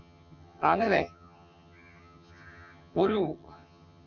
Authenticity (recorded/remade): remade